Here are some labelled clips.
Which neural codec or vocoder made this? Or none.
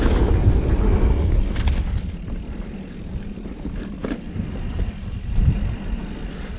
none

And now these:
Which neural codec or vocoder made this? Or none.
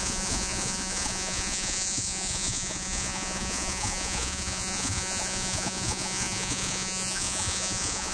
vocoder, Vocos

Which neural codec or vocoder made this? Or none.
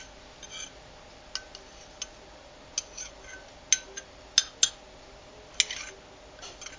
none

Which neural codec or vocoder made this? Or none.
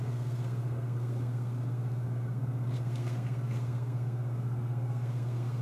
codec, SNAC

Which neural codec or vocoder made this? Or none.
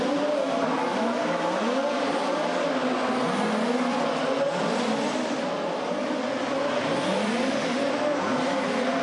none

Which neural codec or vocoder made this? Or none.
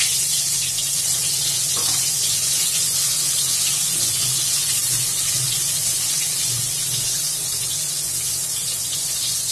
vocoder, Vocos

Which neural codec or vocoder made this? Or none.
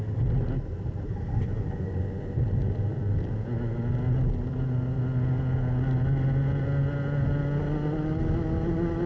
none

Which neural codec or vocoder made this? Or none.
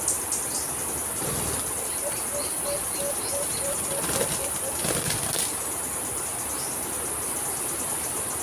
none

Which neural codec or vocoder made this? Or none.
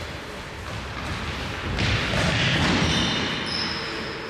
none